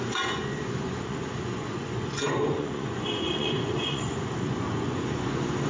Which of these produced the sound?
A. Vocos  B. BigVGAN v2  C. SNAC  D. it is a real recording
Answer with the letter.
A